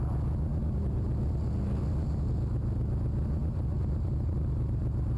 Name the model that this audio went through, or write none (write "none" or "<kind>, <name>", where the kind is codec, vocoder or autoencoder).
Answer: none